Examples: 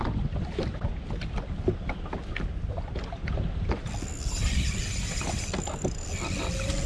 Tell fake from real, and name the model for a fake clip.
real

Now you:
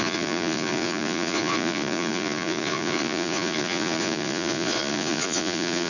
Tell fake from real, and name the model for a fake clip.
fake, vocoder, Vocos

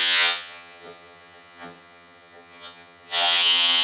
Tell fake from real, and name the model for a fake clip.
fake, vocoder, HiFi-GAN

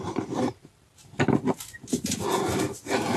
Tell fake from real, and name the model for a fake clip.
real